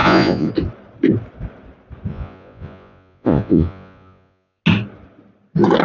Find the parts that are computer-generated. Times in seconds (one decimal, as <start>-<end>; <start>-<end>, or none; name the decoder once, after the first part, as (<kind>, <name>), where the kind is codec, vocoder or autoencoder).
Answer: 0.0-0.5 (vocoder, Vocos); 2.1-4.6